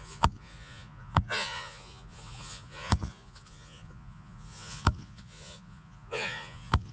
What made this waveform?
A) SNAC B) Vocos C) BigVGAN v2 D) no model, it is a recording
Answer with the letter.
B